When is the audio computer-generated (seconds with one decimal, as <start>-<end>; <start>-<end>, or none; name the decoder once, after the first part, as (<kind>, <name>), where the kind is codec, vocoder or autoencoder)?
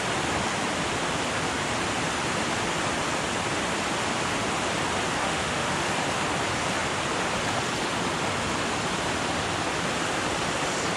5.2-5.9 (autoencoder, DAC-VAE)